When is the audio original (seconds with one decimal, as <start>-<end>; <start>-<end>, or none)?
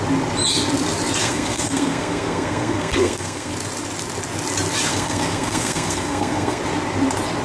0.0-1.2; 3.5-4.9; 6.6-7.4